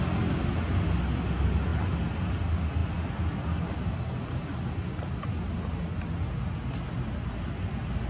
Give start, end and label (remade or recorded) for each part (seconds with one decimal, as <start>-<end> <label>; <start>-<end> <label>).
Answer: 0.0-8.1 recorded